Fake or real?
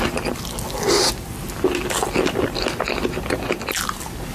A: real